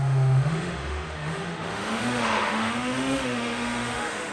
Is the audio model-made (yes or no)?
yes